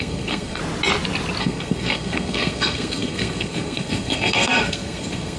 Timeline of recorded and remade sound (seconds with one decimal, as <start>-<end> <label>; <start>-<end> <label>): 0.0-0.6 remade; 0.6-1.4 recorded; 1.4-5.4 remade